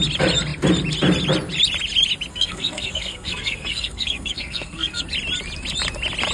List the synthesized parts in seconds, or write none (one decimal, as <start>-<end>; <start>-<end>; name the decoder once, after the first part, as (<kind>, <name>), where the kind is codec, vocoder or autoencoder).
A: 2.3-5.0 (codec, SNAC)